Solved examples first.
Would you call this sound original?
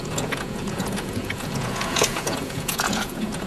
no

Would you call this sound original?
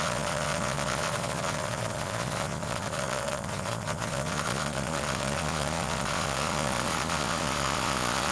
no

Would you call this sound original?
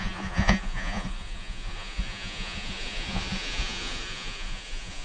no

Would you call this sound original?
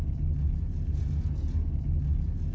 yes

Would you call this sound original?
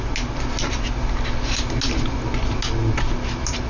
yes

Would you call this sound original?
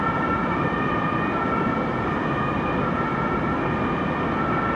yes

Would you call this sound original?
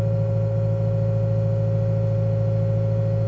yes